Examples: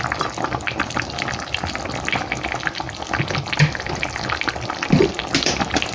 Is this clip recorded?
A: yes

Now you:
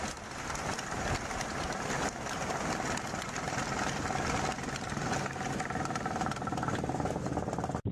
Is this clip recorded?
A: yes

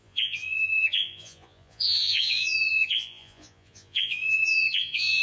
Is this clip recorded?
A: no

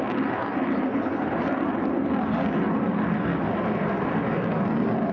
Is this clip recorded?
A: yes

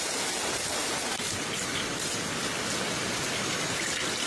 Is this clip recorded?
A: yes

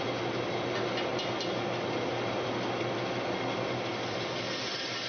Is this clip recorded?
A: yes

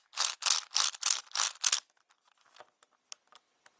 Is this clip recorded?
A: yes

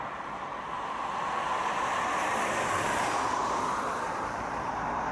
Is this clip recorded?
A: yes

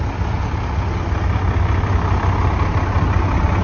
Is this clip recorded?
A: yes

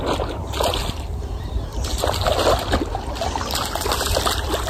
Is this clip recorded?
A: yes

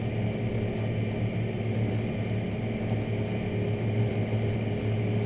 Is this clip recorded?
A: yes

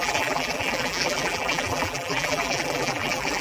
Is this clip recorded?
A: no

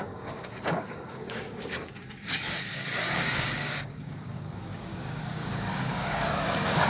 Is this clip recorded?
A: no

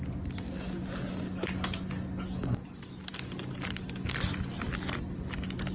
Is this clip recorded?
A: yes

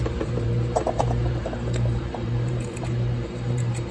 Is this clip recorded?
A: no